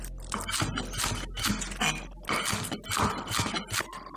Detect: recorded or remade recorded